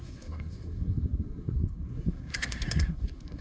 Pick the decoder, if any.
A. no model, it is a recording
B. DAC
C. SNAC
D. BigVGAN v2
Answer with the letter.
C